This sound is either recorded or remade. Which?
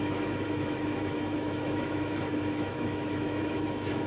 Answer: remade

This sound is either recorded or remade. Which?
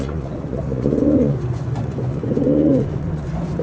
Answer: remade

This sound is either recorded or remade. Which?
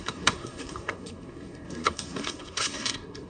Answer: remade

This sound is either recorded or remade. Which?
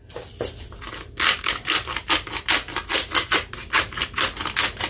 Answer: recorded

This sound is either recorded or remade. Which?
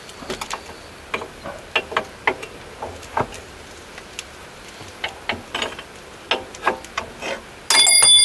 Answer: recorded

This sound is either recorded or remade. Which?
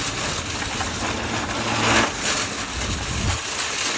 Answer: recorded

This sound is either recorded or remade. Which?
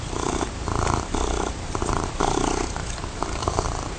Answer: remade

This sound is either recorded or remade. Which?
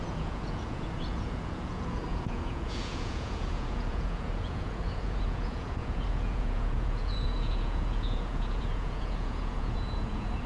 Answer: remade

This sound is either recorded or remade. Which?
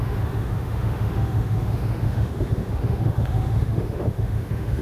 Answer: remade